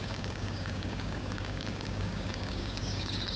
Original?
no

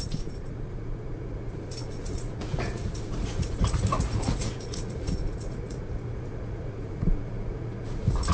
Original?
no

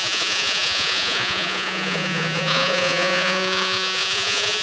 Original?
no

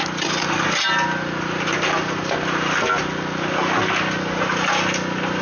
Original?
yes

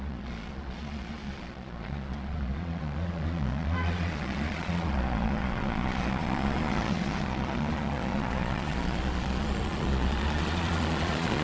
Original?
no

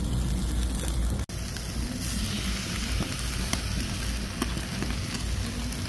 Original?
yes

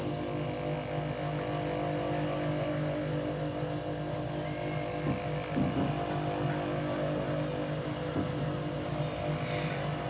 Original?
yes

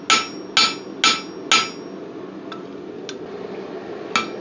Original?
yes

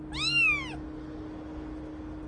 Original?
yes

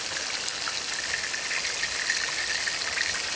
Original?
yes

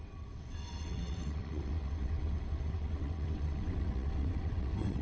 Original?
no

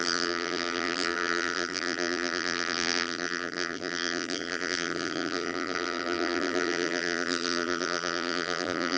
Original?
no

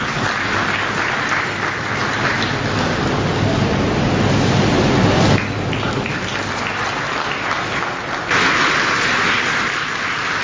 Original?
yes